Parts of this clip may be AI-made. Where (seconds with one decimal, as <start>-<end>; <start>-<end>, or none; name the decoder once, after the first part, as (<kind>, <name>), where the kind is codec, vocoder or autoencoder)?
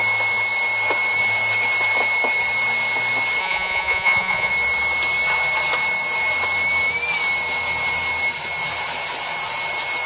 3.4-4.5 (vocoder, Vocos)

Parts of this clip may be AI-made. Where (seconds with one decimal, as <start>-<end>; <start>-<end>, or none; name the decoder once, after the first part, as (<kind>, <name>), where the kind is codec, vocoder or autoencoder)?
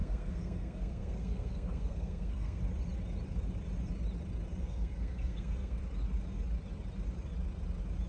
0.0-2.6 (codec, SNAC); 4.6-5.8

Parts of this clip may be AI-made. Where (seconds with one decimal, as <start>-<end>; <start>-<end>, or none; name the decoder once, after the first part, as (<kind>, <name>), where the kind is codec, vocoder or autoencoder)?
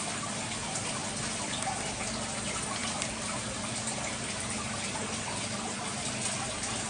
none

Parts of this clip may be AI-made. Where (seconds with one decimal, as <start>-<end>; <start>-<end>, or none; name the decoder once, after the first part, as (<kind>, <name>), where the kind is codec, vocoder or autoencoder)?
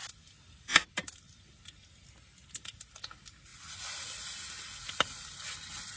none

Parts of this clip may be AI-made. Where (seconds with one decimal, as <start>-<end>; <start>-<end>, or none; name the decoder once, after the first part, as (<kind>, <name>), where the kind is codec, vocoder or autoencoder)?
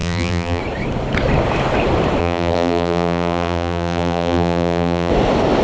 0.0-0.6 (vocoder, BigVGAN v2); 2.2-5.1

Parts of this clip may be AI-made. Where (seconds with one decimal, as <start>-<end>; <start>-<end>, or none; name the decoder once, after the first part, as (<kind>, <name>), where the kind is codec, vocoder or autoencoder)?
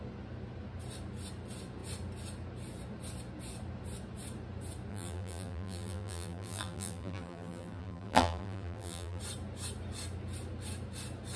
4.9-9.2 (vocoder, BigVGAN v2)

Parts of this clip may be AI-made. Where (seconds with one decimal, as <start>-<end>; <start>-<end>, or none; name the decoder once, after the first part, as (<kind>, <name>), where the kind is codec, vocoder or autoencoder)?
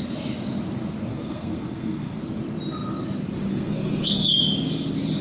1.1-2.2 (codec, SNAC); 3.5-4.4